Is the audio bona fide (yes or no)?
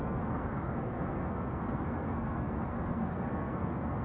no